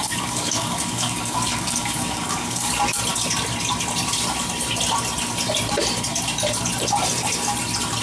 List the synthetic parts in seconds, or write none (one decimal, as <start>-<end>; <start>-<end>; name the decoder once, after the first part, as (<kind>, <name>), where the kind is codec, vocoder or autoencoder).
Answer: 0.0-2.7 (codec, DAC)